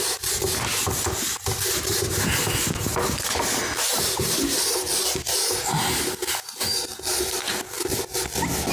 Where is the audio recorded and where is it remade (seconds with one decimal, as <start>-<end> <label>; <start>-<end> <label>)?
0.0-8.7 recorded